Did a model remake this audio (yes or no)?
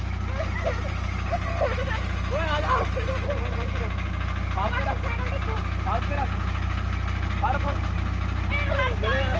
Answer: no